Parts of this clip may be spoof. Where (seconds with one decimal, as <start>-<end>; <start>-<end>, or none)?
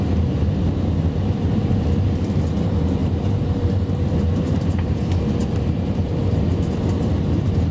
3.0-5.0; 5.4-6.1